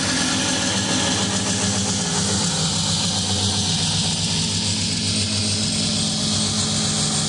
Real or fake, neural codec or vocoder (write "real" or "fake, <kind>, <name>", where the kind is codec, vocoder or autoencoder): real